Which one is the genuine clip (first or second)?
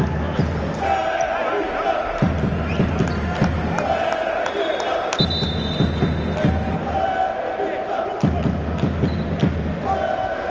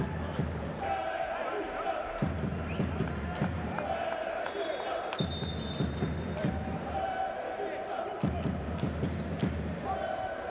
first